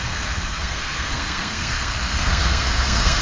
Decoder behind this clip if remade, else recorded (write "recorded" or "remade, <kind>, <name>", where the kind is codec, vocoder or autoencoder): remade, codec, SNAC